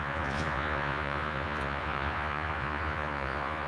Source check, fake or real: fake